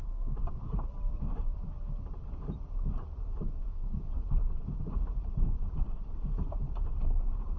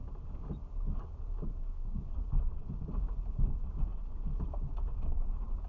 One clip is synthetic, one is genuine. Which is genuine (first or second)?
second